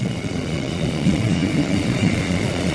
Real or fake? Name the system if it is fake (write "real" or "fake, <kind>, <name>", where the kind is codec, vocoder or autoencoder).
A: fake, vocoder, Vocos